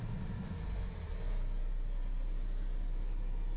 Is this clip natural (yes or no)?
yes